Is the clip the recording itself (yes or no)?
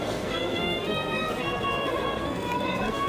no